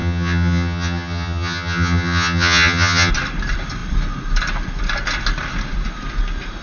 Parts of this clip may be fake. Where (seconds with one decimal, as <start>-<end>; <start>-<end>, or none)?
0.0-3.1